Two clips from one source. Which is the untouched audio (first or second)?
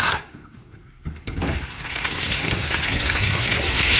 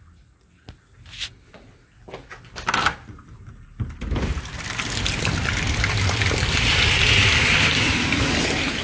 second